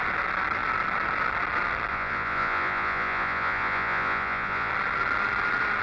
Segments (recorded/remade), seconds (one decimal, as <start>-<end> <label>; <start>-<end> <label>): 0.0-1.9 recorded; 1.9-4.7 remade; 4.7-5.8 recorded